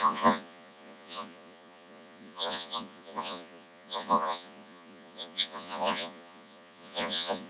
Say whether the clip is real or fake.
fake